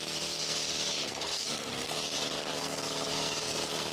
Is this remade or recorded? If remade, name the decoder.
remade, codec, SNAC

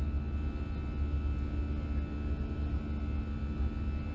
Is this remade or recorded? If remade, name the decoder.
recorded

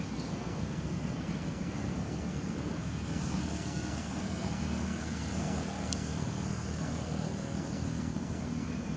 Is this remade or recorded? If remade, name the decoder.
remade, codec, SNAC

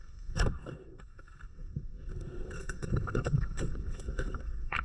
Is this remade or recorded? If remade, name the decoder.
remade, codec, SNAC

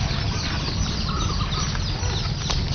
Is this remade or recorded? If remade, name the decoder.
recorded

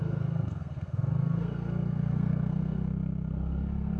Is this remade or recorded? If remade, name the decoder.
remade, codec, SNAC